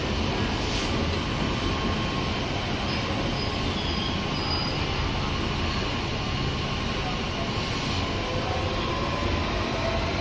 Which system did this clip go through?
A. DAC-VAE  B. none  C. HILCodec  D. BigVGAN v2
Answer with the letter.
B